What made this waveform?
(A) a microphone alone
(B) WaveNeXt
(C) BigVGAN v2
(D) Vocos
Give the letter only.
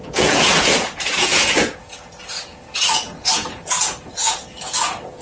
D